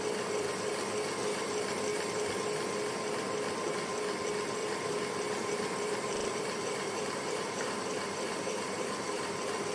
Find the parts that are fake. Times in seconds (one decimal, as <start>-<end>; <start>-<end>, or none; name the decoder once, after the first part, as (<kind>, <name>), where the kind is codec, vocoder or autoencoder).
4.6-9.7 (vocoder, BigVGAN v2)